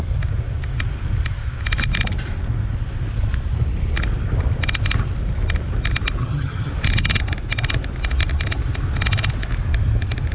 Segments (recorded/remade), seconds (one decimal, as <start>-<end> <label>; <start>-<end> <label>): 0.0-6.2 recorded; 6.2-6.7 remade; 6.7-10.3 recorded